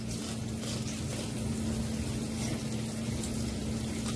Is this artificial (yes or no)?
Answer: no